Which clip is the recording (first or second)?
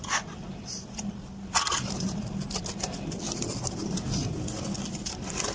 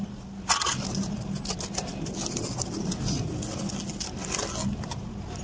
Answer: second